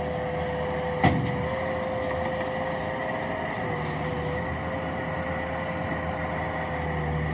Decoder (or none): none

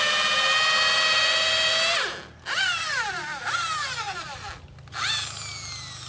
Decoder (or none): none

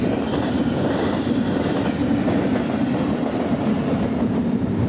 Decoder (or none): vocoder, BigVGAN v2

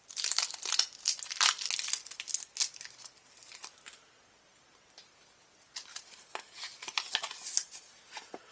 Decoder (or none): none